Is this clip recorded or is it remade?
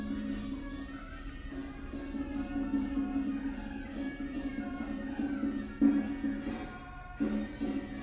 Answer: recorded